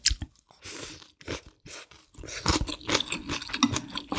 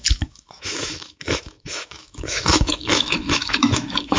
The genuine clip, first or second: first